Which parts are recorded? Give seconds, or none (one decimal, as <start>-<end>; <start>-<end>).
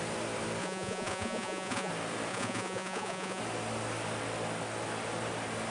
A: 0.0-0.6; 1.9-2.3; 3.4-5.7